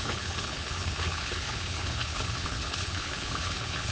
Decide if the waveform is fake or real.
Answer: fake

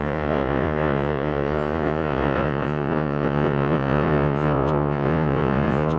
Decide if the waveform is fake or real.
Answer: fake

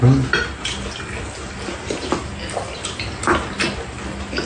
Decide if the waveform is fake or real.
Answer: real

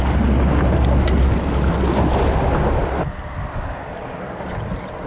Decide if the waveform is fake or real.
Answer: real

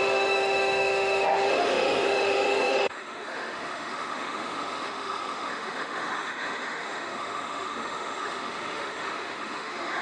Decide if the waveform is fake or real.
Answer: fake